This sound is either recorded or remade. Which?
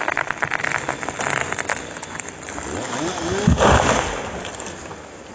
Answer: recorded